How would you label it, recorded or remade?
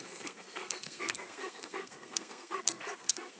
remade